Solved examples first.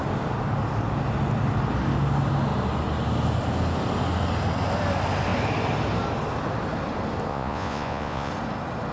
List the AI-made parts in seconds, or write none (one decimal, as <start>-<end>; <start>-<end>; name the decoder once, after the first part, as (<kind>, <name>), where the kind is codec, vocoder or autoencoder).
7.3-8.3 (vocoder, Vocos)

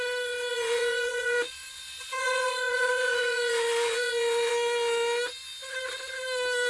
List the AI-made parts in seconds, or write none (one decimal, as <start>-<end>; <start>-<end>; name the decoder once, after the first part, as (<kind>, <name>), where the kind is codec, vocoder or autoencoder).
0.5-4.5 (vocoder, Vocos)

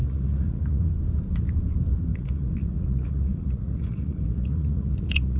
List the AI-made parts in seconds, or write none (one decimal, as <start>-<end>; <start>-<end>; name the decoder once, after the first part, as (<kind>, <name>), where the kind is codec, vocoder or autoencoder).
0.0-0.9 (vocoder, Vocos); 2.1-5.4

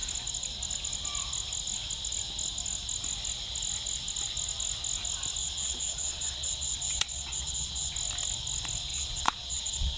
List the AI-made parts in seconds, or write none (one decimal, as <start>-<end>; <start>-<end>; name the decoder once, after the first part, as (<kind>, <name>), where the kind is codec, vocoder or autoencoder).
5.4-7.9 (vocoder, Vocos); 8.9-10.0

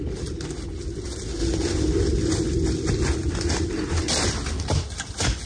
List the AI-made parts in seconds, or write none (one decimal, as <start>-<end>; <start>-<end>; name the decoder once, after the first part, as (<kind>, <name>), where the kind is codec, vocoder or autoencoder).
none